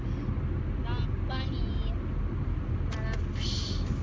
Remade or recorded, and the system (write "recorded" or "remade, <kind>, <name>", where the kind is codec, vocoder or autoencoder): recorded